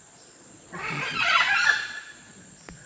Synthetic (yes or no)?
yes